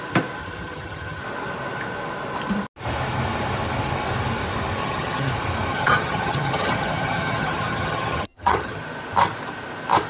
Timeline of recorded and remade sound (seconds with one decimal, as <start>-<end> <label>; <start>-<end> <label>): 0.0-0.4 recorded; 0.4-1.2 remade; 1.2-4.8 recorded; 4.8-5.3 remade; 5.3-5.7 recorded; 5.7-8.8 remade; 8.8-10.1 recorded

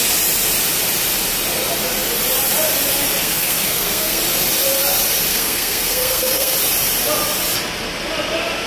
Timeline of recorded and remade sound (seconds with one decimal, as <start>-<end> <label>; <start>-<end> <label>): 0.0-3.2 recorded; 3.2-4.2 remade; 4.2-5.3 recorded; 5.3-6.5 remade; 6.5-8.7 recorded

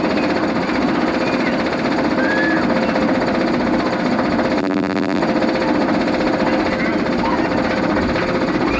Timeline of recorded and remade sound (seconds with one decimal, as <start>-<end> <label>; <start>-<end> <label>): 0.0-4.6 recorded; 4.6-5.2 remade; 5.2-8.8 recorded

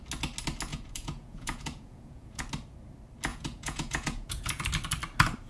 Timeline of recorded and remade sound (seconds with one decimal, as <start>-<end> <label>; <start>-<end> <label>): 0.0-0.7 recorded; 0.7-2.4 remade; 2.4-3.3 recorded; 3.3-4.6 remade; 4.6-5.5 recorded

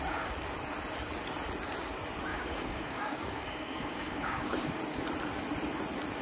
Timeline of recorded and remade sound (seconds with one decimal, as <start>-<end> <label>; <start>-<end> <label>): 0.0-2.3 recorded; 2.3-4.8 remade; 4.8-6.2 recorded

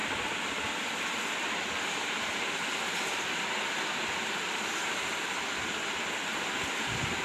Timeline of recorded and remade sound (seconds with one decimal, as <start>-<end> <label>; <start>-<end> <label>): 0.0-7.2 recorded

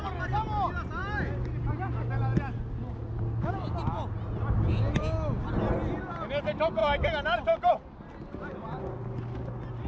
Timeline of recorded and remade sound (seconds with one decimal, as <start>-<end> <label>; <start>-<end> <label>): 0.0-9.9 recorded

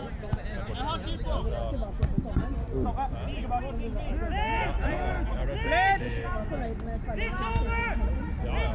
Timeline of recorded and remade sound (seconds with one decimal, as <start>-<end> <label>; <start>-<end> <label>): 0.0-8.7 recorded